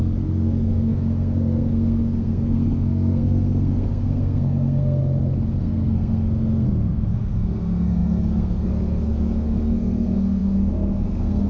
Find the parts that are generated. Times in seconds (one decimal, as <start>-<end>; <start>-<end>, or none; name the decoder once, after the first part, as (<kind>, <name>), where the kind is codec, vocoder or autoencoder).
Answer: 0.0-5.0 (codec, SNAC); 5.6-11.5